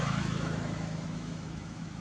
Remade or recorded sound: remade